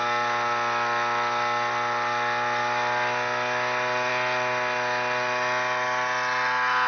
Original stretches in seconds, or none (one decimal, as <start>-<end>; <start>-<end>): 0.0-6.9